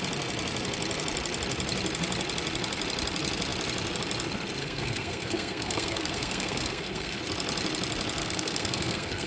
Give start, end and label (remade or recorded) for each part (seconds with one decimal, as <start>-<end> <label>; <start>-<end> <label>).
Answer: 0.0-4.6 recorded; 4.6-7.2 remade; 7.2-8.2 recorded; 8.2-9.3 remade